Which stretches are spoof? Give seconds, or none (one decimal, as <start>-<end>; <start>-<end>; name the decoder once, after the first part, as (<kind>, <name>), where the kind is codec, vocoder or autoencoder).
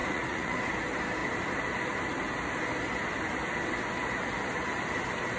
0.0-0.7 (vocoder, Vocos)